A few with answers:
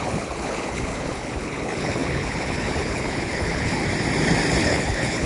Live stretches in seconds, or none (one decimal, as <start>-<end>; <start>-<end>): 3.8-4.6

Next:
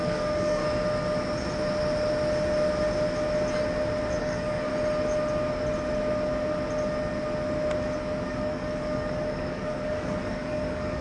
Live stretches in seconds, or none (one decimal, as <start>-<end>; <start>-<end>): 0.6-4.2; 4.7-8.3

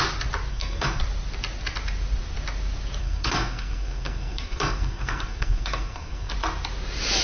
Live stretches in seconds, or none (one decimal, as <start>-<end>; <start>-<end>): 0.0-0.5; 1.0-3.0; 6.3-7.2